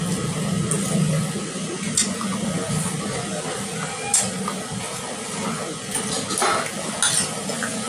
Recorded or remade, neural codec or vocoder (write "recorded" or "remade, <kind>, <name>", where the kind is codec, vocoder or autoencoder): recorded